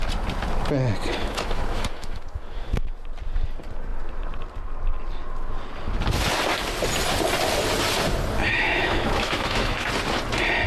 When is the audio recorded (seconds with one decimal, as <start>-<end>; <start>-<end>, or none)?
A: 0.0-1.2; 2.9-8.4; 9.9-10.7

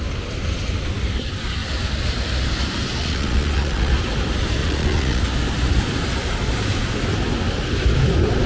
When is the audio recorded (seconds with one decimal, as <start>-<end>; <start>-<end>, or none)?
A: 0.0-3.0; 3.9-4.6; 5.2-8.5

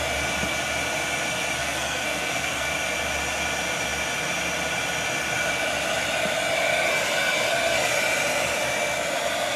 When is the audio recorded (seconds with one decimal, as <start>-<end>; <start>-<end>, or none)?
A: 0.0-1.6; 2.7-9.6

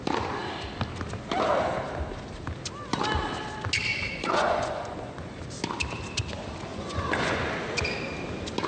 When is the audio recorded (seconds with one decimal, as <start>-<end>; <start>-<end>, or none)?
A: 0.0-3.9; 5.4-6.7; 7.4-8.7

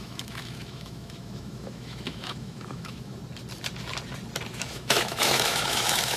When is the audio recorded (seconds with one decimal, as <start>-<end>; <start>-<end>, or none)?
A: 3.2-4.5

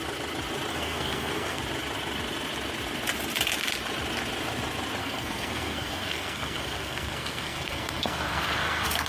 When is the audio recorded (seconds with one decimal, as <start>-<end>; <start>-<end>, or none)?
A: 0.0-0.7; 1.6-5.0

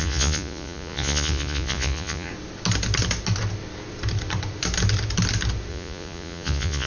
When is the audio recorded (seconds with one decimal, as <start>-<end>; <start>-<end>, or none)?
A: 2.3-5.7

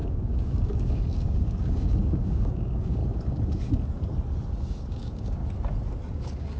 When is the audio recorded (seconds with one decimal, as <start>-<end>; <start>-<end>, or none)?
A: 3.0-4.6; 5.4-6.1